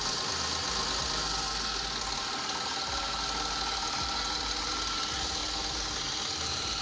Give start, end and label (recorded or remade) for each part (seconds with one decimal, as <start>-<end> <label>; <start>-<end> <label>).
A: 0.0-6.8 recorded